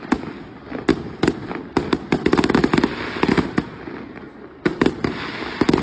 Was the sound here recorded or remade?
recorded